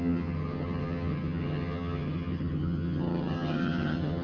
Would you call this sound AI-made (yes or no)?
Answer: yes